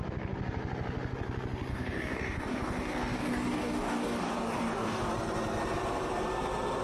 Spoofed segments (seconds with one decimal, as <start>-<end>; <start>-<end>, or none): 1.7-5.1